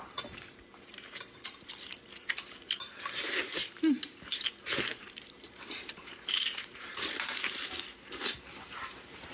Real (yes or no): no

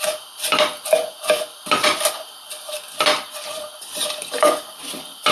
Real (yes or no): no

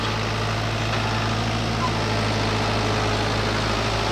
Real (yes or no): yes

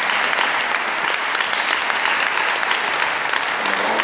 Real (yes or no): yes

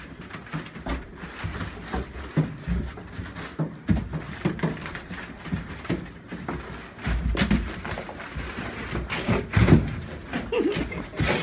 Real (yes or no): yes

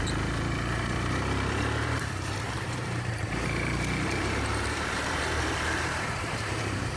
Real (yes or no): no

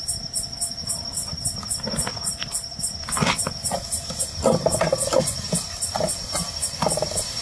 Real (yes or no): yes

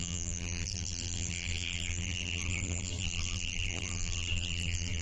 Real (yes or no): no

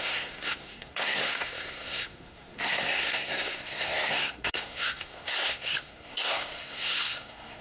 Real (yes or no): no